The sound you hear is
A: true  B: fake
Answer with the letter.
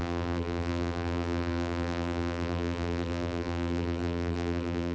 B